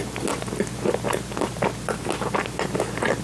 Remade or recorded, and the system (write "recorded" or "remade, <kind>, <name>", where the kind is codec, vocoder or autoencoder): recorded